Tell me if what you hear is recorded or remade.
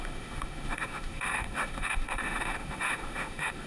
remade